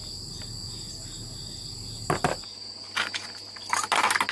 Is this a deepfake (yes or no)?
no